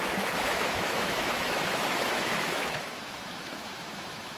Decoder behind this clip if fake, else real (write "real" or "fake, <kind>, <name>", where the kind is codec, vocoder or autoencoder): fake, autoencoder, DAC-VAE